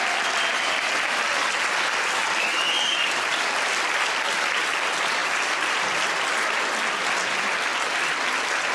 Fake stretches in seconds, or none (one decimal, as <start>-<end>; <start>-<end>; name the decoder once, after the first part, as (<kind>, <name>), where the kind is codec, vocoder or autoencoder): 2.5-4.7 (vocoder, BigVGAN v2); 5.2-6.6; 7.7-8.7